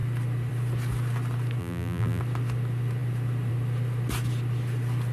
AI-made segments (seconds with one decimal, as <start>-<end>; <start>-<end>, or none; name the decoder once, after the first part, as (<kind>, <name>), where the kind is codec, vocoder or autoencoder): 1.6-2.2 (vocoder, BigVGAN v2)

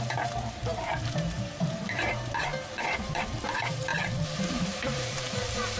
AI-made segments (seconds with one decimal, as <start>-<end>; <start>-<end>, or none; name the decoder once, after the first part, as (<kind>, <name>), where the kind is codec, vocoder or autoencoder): 0.0-3.9 (vocoder, BigVGAN v2); 4.4-5.8

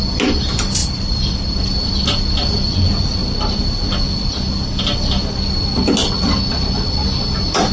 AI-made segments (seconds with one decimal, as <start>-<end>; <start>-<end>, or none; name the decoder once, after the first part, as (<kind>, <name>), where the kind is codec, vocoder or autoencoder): 0.8-1.9 (vocoder, BigVGAN v2)

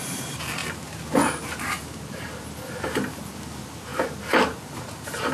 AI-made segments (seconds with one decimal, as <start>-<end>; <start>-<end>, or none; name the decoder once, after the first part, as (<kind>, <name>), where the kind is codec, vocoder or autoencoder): 0.0-3.9 (vocoder, BigVGAN v2); 4.4-5.3

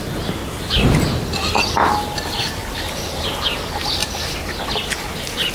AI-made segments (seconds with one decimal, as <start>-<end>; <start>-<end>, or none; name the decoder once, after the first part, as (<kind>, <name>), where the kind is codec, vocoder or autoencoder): 2.6-3.6 (vocoder, BigVGAN v2)